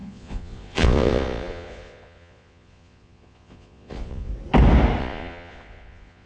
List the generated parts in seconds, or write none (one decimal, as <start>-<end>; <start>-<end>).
0.0-4.3; 5.0-6.3